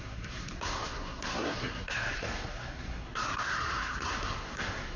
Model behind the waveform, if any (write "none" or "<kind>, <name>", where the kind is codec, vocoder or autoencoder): codec, SNAC